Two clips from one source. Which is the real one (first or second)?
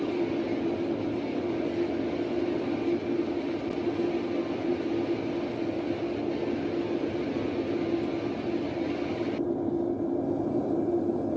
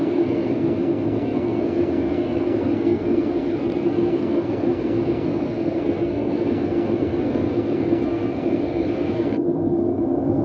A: first